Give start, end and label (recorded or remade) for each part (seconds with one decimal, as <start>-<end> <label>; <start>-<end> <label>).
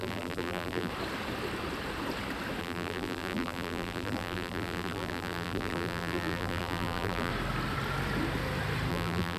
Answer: 0.0-0.9 remade; 0.9-2.6 recorded; 2.6-7.3 remade; 7.3-8.9 recorded; 8.9-9.4 remade